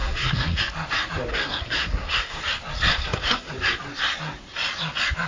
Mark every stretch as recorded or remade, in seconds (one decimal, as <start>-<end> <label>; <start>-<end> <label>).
0.0-0.6 remade; 0.6-1.3 recorded; 1.3-2.4 remade; 2.4-2.9 recorded; 2.9-3.5 remade; 3.5-5.3 recorded